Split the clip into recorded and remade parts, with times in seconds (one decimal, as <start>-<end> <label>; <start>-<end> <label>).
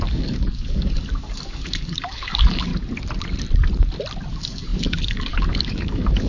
0.0-2.7 remade; 2.7-4.3 recorded; 4.3-6.3 remade